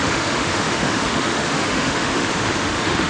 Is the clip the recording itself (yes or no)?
no